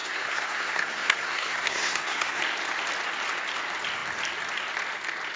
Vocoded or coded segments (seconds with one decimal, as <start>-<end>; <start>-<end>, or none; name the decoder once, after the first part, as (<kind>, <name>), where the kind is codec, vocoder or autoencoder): 0.0-2.4 (codec, SNAC)